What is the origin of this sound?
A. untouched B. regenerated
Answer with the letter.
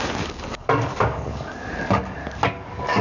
B